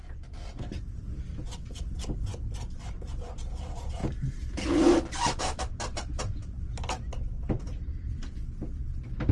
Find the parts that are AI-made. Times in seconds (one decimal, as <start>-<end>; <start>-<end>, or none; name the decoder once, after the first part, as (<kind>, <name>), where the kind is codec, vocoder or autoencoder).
7.4-8.3 (vocoder, BigVGAN v2)

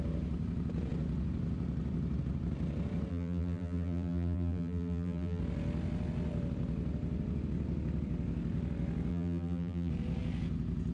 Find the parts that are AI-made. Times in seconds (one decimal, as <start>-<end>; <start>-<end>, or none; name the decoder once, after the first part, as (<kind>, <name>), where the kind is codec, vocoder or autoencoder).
3.1-5.4 (vocoder, BigVGAN v2); 9.1-9.9

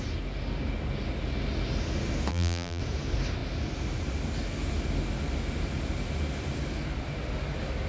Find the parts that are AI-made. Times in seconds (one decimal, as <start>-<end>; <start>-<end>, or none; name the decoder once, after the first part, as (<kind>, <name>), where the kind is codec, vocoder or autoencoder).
2.3-2.8 (vocoder, BigVGAN v2)

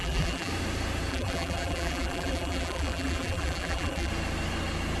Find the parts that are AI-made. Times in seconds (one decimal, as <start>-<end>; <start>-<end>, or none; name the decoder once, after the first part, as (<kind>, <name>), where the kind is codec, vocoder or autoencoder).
0.0-0.5 (vocoder, BigVGAN v2); 1.1-4.1

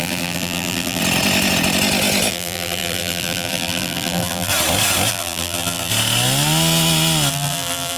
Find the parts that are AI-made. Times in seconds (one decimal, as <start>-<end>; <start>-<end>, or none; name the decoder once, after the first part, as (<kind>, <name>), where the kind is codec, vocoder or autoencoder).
0.0-1.0 (vocoder, BigVGAN v2); 2.3-4.5; 5.1-5.9; 7.3-8.0

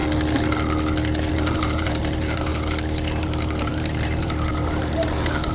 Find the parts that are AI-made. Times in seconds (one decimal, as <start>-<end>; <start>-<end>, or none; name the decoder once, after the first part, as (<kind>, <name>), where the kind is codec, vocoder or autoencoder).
1.3-2.5 (vocoder, BigVGAN v2); 3.2-5.5

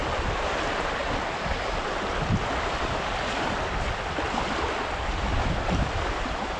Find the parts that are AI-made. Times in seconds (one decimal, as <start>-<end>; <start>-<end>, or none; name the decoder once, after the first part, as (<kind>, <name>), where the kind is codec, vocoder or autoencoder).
0.0-1.0 (vocoder, BigVGAN v2); 5.0-6.6

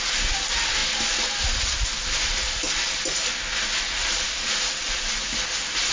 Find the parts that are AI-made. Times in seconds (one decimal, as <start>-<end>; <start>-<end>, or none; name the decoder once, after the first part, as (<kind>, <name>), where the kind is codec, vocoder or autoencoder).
4.0-5.1 (vocoder, BigVGAN v2)